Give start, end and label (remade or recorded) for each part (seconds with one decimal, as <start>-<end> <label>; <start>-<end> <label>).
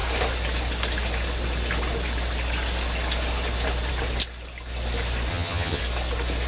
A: 0.0-5.3 recorded; 5.3-5.8 remade; 5.8-6.5 recorded